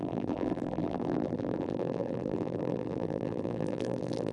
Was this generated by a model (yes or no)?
yes